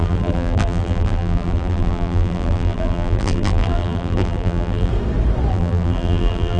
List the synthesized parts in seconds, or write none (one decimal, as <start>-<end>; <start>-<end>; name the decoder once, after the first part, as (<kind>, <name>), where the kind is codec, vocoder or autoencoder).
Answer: 0.0-4.9 (vocoder, BigVGAN v2); 5.5-6.6